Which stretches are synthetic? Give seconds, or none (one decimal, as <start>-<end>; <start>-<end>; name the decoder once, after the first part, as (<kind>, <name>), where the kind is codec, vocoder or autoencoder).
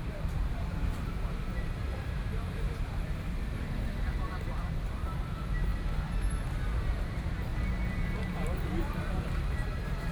0.0-5.7 (vocoder, BigVGAN v2); 7.0-7.5; 8.8-10.1